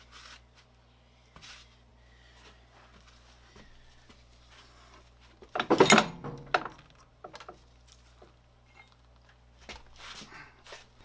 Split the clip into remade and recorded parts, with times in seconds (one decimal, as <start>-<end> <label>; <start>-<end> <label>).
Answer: 0.0-11.0 recorded